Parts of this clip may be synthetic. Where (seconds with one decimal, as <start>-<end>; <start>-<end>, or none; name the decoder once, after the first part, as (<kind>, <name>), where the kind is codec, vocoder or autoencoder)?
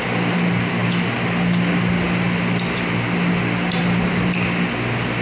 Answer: none